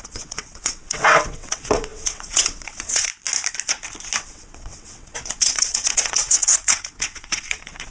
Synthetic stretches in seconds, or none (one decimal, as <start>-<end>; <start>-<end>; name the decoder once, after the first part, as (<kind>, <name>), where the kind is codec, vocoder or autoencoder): 0.0-3.1 (vocoder, WaveNeXt); 4.2-7.9